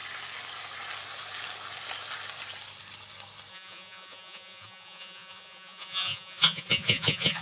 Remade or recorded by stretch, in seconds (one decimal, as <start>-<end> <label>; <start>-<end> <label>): 0.0-3.5 recorded; 3.5-7.4 remade